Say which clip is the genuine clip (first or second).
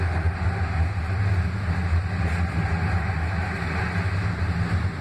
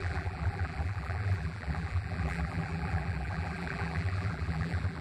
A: first